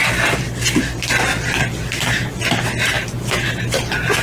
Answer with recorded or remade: recorded